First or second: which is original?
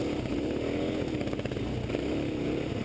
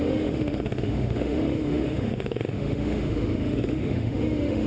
first